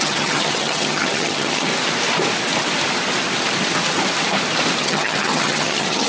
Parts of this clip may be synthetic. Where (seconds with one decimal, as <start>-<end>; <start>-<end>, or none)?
0.0-1.7; 4.8-6.1